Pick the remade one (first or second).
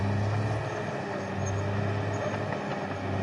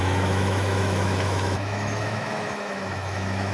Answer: second